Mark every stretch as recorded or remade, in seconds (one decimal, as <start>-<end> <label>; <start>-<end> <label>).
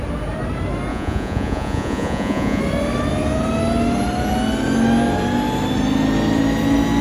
0.0-0.9 recorded; 0.9-2.6 remade; 2.6-7.0 recorded